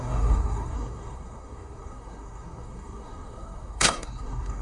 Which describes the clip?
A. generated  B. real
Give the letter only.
A